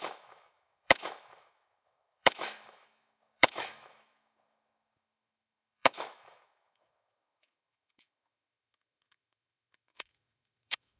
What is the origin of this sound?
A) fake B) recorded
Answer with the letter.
A